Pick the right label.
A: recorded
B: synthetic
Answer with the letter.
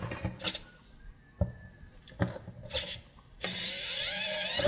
A